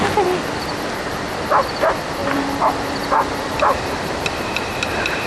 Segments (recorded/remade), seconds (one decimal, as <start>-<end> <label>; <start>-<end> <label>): 0.0-2.2 recorded; 2.2-5.3 remade